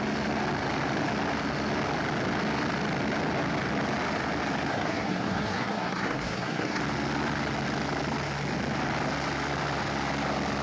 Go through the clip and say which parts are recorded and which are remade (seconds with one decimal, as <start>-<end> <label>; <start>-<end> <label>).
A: 0.0-4.7 recorded; 4.7-6.8 remade; 6.8-10.6 recorded